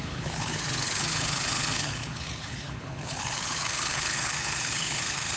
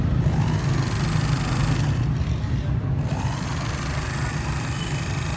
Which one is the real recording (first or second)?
second